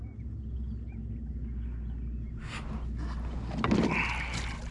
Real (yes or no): yes